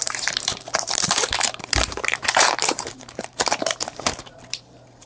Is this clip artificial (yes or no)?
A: yes